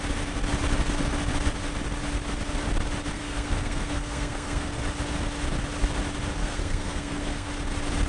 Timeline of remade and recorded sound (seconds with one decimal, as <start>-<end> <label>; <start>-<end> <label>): 0.0-3.1 recorded; 3.1-4.8 remade; 4.8-6.4 recorded; 6.4-7.5 remade; 7.5-8.1 recorded